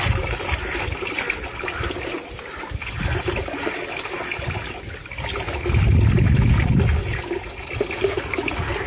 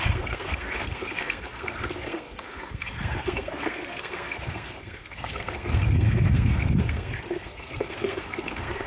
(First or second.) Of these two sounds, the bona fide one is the first